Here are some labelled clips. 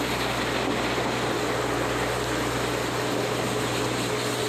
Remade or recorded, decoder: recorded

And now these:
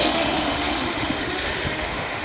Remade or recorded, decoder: remade, autoencoder, DAC-VAE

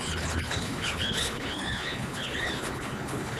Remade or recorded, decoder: remade, codec, HILCodec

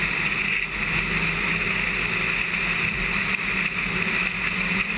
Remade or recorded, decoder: recorded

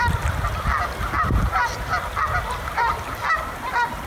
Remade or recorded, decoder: recorded